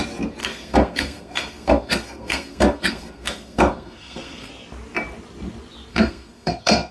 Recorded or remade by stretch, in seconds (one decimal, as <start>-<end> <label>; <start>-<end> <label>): 0.0-0.4 recorded; 0.4-4.5 remade; 4.5-5.9 recorded; 5.9-6.9 remade